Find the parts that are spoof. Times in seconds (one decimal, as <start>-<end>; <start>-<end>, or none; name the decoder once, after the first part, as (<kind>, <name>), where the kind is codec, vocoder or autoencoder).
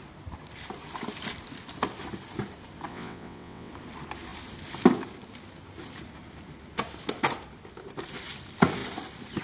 2.9-3.7 (vocoder, WaveNeXt)